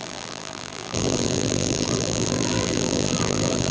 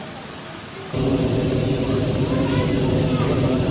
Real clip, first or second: second